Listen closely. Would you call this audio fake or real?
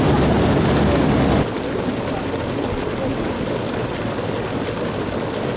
real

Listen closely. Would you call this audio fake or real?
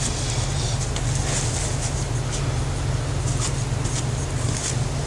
real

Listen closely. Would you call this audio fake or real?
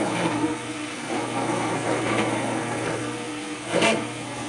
fake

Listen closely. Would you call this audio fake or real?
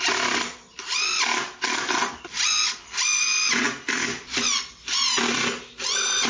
real